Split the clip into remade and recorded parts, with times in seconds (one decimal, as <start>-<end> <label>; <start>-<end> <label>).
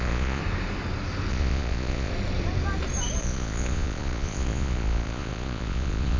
0.0-0.4 remade; 0.4-1.3 recorded; 1.3-2.1 remade; 2.1-3.2 recorded; 3.2-6.2 remade